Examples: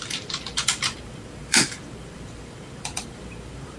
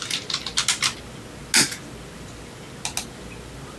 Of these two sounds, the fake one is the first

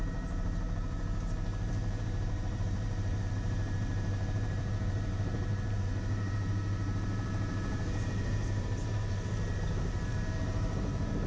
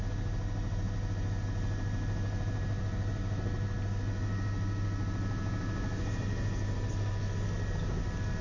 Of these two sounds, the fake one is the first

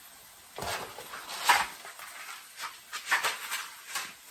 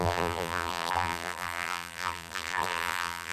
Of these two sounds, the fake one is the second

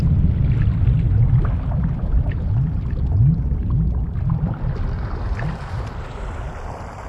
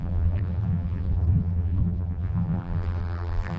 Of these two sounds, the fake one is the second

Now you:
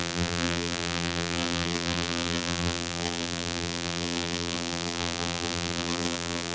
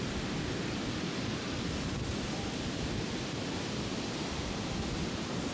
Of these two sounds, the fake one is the first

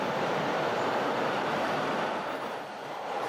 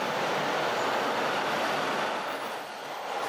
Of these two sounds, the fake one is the first